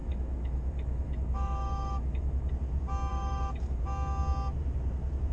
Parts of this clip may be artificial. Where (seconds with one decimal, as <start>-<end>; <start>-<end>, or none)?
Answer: 0.0-2.5; 3.1-3.8